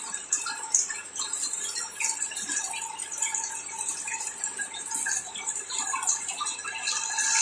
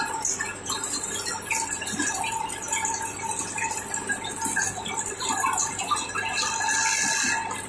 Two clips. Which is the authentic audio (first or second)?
second